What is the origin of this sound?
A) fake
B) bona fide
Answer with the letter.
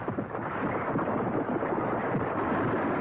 B